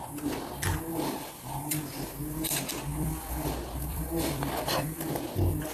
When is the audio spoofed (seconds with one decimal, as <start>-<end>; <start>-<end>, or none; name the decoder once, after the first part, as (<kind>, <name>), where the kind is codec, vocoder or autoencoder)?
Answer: 0.9-2.1 (vocoder, BigVGAN v2); 2.9-5.2